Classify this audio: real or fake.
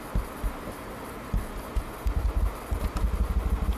real